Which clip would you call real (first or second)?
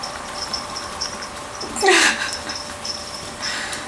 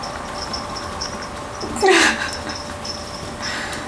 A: second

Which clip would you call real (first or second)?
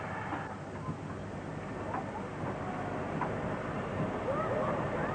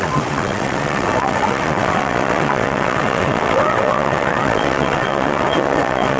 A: first